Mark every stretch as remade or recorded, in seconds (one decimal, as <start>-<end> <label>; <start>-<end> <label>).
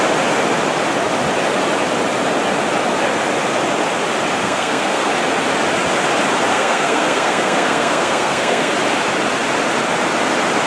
0.0-4.4 recorded; 4.4-5.1 remade; 5.1-6.5 recorded; 6.5-8.7 remade; 8.7-10.7 recorded